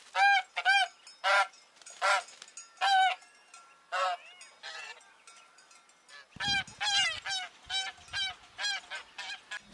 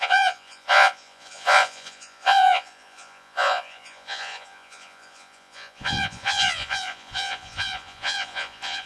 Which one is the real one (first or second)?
first